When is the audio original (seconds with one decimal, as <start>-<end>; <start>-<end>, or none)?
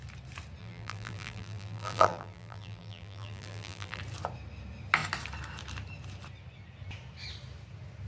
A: 0.0-0.6; 4.0-8.1